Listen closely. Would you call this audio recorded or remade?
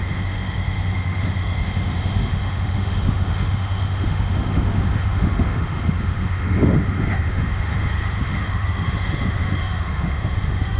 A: remade